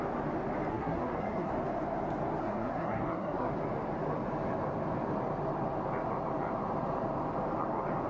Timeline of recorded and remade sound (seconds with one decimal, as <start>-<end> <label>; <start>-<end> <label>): 0.0-0.7 recorded; 0.7-1.5 remade; 1.5-2.4 recorded; 2.4-3.5 remade; 3.5-8.1 recorded